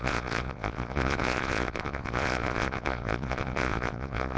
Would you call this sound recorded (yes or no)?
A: no